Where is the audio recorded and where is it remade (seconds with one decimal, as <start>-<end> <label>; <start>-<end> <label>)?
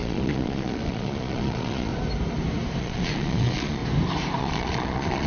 0.0-1.9 remade; 1.9-2.8 recorded; 2.8-3.8 remade; 3.8-4.4 recorded; 4.4-5.3 remade